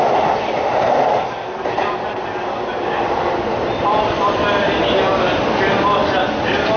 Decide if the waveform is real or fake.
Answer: real